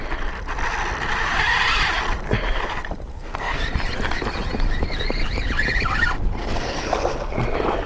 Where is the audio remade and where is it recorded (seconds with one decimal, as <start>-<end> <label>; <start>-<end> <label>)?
0.0-3.1 recorded; 3.1-3.6 remade; 3.6-6.4 recorded; 6.4-6.9 remade; 6.9-7.9 recorded